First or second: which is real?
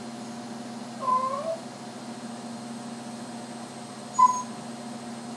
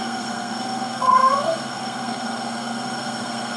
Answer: first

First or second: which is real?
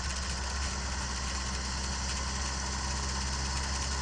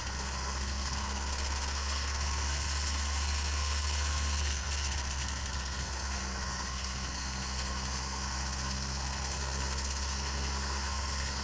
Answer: first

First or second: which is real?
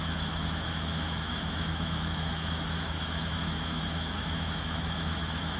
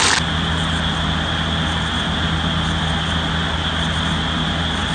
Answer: second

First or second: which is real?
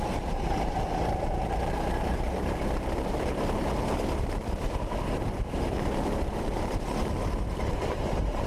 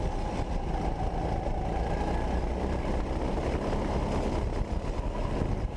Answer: second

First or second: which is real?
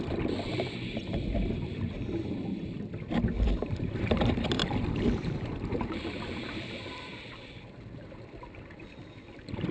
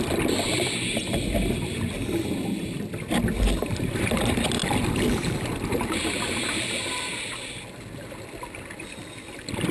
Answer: second